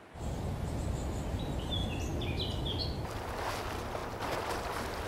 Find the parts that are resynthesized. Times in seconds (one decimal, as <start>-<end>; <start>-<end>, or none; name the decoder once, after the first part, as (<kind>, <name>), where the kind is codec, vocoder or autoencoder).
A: none